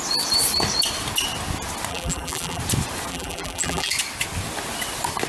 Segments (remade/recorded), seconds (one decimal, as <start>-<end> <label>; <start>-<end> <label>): 0.0-1.9 recorded; 1.9-2.6 remade; 2.6-3.1 recorded; 3.1-3.9 remade; 3.9-5.3 recorded